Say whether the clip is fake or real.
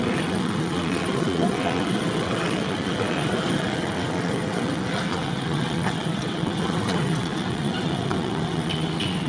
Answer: fake